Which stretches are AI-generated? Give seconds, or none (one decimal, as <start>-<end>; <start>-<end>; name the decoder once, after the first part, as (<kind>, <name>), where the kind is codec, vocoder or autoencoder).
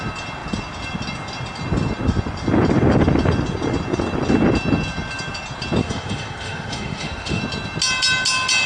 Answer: 5.8-7.4 (autoencoder, DAC-VAE)